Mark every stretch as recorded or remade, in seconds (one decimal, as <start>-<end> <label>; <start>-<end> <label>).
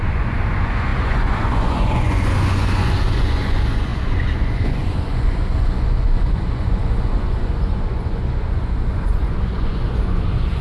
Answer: 0.0-10.6 remade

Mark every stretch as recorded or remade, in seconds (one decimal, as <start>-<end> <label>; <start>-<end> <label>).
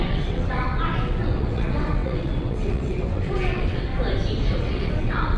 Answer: 0.0-3.9 remade; 3.9-4.6 recorded; 4.6-5.4 remade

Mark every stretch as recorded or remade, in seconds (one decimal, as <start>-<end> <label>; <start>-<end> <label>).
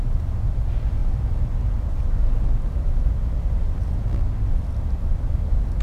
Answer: 0.0-5.8 recorded